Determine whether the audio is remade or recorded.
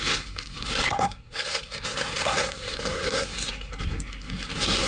remade